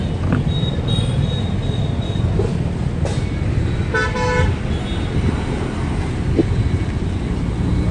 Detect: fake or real real